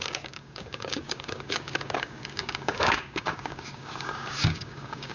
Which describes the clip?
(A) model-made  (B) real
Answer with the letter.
A